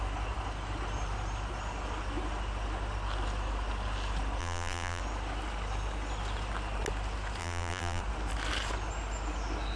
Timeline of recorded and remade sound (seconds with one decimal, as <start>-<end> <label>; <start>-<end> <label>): 0.0-4.4 recorded; 4.4-5.0 remade; 5.0-7.4 recorded; 7.4-8.0 remade; 8.0-9.8 recorded